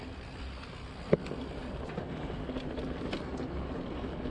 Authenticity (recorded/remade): recorded